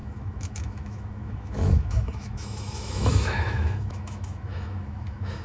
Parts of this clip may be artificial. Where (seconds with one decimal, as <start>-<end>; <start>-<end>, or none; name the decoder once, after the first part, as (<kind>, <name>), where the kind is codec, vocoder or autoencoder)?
0.0-5.4 (autoencoder, DAC-VAE)